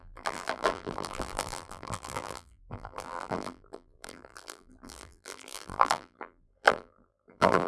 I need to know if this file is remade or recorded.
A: remade